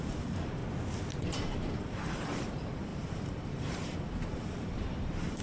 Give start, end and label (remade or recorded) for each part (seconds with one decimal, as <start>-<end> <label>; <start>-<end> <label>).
0.0-0.6 remade; 0.6-1.2 recorded; 1.2-5.4 remade

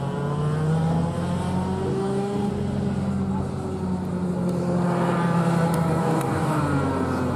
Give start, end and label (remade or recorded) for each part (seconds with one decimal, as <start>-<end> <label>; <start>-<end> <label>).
0.0-1.9 recorded; 1.9-2.5 remade; 2.5-6.0 recorded; 6.0-6.6 remade; 6.6-7.4 recorded

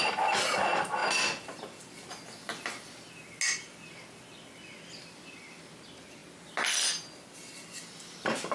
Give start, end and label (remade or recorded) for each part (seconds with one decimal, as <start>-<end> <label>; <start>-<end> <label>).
0.0-8.5 recorded

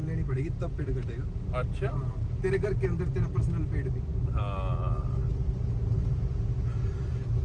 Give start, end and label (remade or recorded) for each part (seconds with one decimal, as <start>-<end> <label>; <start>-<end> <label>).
0.0-7.4 recorded

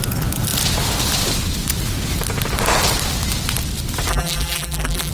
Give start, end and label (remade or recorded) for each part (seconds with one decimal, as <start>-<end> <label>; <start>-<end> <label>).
0.0-4.1 recorded; 4.1-5.1 remade